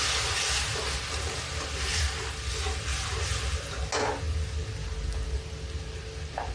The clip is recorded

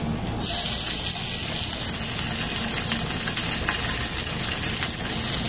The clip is recorded